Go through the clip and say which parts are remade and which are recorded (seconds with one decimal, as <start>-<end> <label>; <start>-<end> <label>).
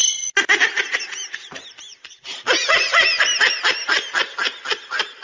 0.0-1.9 recorded; 1.9-3.6 remade; 3.6-5.2 recorded